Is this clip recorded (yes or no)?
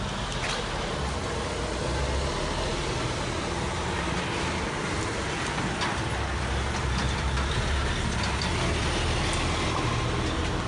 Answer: yes